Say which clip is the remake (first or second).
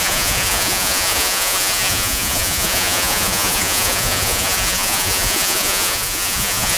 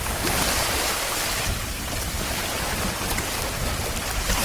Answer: first